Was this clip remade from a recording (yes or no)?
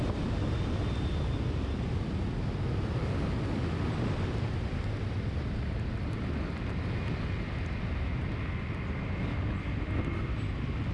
no